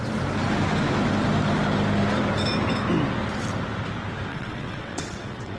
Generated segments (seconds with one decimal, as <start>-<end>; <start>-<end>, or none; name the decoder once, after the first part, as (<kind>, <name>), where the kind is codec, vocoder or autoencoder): 4.3-5.6 (vocoder, WaveNeXt)